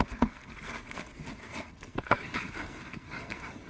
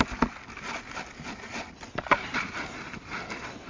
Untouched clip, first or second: second